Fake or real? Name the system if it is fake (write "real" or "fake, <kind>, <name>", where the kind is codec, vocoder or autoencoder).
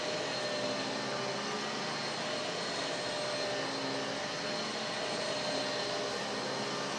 real